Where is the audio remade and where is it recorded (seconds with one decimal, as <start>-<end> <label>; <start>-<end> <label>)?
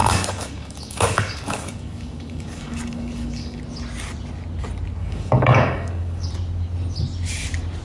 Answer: 0.0-3.6 remade; 3.6-5.0 recorded; 5.0-6.3 remade; 6.3-7.8 recorded